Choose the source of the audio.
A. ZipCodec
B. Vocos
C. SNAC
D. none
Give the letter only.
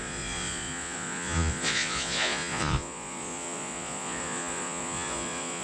B